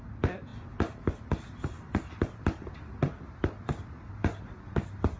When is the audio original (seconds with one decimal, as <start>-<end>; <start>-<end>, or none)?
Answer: 0.0-5.2